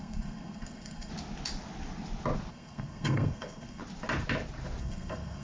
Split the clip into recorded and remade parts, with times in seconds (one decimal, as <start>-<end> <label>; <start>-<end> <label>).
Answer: 0.0-1.1 remade; 1.1-2.5 recorded; 2.5-3.8 remade; 3.8-4.8 recorded; 4.8-5.4 remade